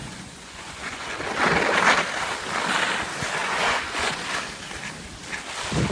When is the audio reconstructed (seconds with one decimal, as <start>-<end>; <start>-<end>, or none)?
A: 0.0-1.2; 3.4-4.2